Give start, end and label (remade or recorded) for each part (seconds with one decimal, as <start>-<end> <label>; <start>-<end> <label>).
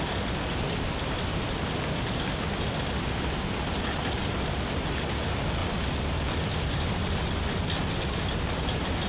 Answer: 0.0-5.6 recorded; 5.6-7.1 remade; 7.1-9.1 recorded